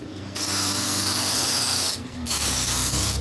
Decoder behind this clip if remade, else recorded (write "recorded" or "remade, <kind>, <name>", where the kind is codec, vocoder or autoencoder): remade, codec, SNAC